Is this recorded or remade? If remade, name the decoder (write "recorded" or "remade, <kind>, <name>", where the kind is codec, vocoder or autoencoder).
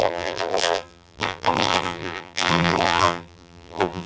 remade, vocoder, BigVGAN v2